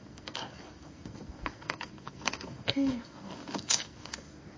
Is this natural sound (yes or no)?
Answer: no